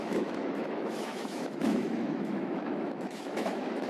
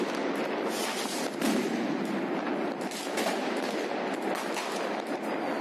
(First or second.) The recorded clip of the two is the second